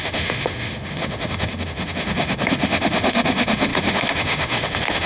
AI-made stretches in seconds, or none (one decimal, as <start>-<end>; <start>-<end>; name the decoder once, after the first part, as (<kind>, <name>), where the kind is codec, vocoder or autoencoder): 0.0-5.1 (autoencoder, DAC-VAE)